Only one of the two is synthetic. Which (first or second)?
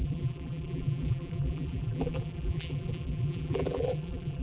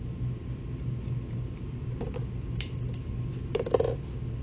first